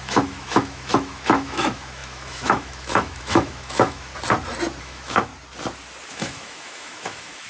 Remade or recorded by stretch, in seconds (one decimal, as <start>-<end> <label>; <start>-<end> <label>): 0.0-4.1 remade; 4.1-4.8 recorded; 4.8-5.3 remade; 5.3-6.1 recorded; 6.1-7.5 remade